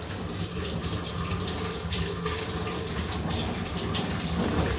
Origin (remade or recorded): recorded